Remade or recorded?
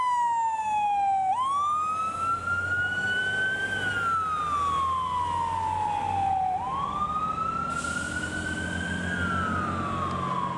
recorded